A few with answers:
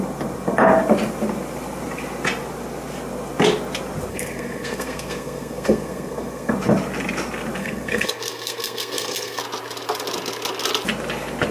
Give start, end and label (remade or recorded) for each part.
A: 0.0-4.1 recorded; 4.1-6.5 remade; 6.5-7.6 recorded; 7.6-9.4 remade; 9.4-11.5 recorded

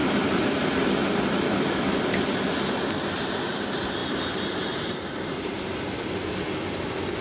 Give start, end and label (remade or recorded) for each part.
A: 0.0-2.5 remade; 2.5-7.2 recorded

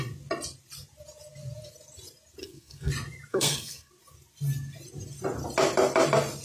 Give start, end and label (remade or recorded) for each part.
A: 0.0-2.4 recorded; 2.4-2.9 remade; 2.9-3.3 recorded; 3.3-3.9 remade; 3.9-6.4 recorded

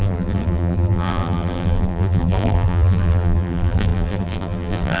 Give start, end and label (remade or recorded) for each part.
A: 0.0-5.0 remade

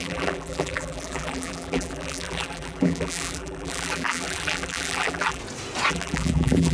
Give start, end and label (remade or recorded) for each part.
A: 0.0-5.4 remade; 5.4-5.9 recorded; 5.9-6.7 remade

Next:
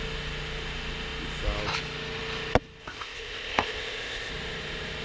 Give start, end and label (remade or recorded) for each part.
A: 0.0-2.8 recorded; 2.8-4.3 remade; 4.3-5.0 recorded

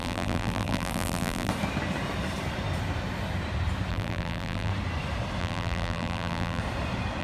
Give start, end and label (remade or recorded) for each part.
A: 0.0-1.5 remade; 1.5-3.9 recorded; 3.9-4.7 remade; 4.7-5.4 recorded; 5.4-6.6 remade; 6.6-7.2 recorded